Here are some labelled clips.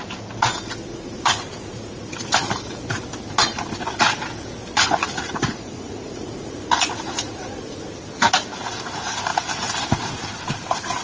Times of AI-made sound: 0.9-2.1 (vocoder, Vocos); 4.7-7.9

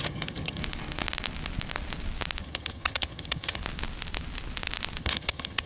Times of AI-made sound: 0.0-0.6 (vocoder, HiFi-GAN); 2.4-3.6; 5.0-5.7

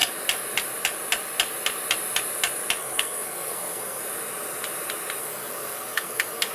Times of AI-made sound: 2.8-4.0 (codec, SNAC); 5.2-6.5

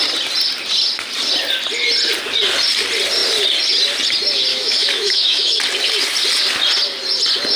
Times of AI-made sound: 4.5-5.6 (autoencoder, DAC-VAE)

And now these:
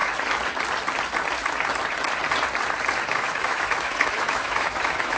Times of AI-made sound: 3.1-5.2 (autoencoder, DAC-VAE)

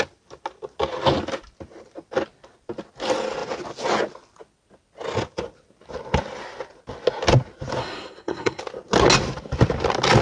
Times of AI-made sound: 7.8-8.6 (codec, SNAC)

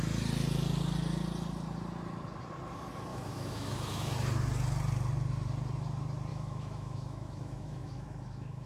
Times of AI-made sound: 3.1-4.1 (autoencoder, DAC-VAE); 6.3-8.7